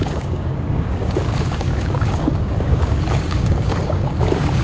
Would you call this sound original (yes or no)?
no